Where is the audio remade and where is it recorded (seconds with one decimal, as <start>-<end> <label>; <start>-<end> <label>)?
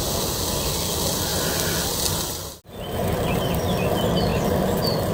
0.0-5.1 recorded